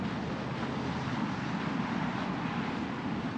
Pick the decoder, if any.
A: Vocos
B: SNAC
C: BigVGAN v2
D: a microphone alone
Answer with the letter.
D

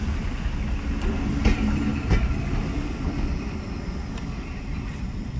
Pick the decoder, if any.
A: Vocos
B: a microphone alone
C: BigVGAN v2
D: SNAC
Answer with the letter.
B